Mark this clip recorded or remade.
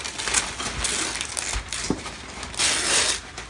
recorded